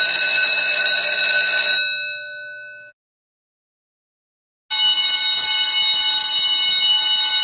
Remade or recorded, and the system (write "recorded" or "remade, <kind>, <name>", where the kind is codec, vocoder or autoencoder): recorded